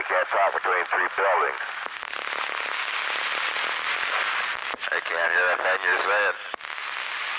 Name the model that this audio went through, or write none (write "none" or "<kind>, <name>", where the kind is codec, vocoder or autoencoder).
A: none